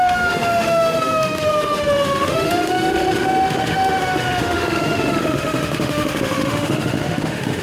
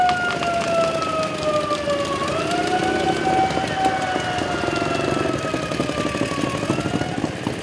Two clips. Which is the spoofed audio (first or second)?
first